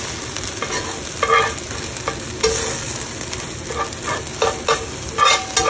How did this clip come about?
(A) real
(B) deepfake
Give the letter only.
A